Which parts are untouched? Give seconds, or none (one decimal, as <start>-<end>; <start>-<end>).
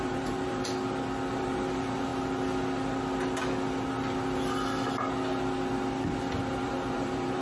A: 0.6-1.3; 2.1-6.5